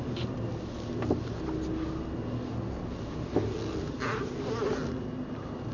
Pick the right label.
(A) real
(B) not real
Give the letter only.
A